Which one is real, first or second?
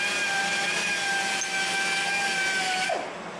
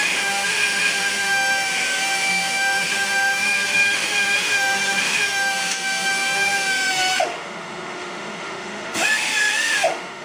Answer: first